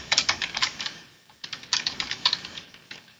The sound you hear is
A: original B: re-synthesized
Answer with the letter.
B